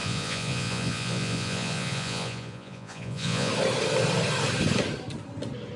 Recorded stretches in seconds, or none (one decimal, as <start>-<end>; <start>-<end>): 3.5-5.8